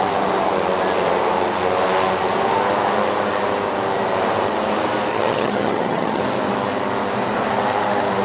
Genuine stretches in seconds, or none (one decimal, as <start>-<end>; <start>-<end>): 0.0-5.1; 6.2-8.2